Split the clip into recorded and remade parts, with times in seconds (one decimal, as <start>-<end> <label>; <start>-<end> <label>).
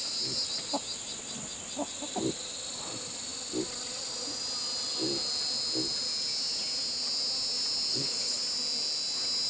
0.0-7.9 recorded; 7.9-8.4 remade; 8.4-9.5 recorded